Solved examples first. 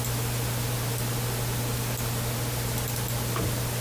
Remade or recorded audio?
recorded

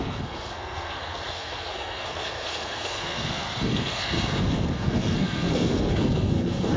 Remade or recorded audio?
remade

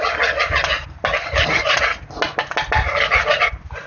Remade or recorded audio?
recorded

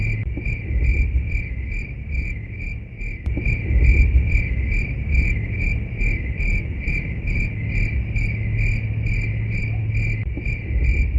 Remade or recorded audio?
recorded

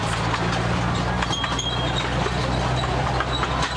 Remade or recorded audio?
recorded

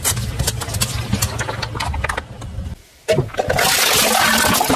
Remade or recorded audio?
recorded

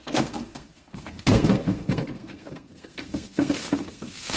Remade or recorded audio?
remade